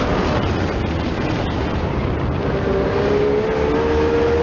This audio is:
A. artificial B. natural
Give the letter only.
B